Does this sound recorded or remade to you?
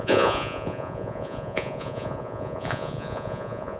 remade